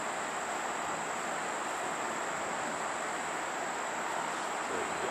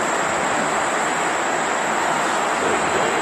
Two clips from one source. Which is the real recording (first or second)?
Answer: first